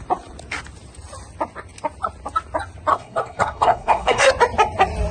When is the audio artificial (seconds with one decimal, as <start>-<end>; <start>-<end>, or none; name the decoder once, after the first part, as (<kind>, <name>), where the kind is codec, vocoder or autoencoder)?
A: 2.9-4.3 (codec, SNAC)